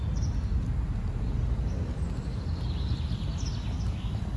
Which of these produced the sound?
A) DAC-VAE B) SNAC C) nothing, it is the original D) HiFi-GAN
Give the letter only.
C